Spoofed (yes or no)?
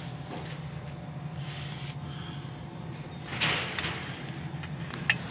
no